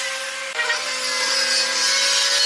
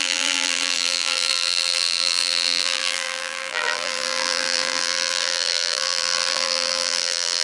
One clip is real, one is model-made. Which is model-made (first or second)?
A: second